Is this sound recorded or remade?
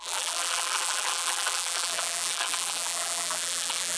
remade